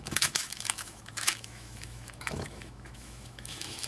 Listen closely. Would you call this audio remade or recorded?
remade